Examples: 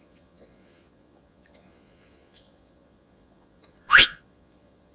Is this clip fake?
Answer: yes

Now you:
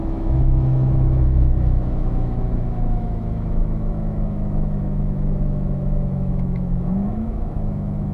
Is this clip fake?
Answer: yes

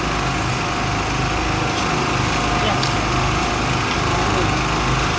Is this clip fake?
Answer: no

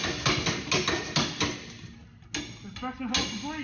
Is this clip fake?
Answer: no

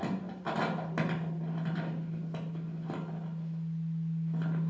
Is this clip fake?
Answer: no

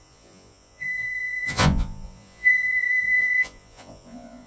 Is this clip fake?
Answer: yes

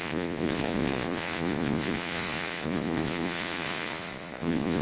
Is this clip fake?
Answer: yes